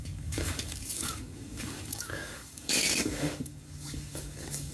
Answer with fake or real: fake